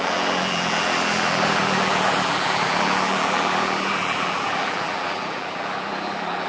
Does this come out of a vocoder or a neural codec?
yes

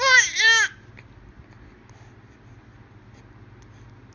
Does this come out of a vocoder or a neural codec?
no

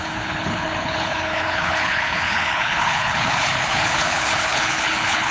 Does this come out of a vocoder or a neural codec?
yes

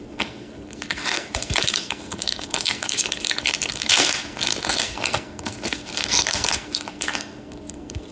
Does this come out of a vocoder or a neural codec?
yes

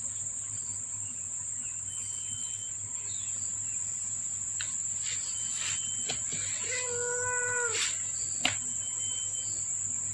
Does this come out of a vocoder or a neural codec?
no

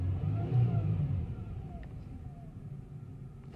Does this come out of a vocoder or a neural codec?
yes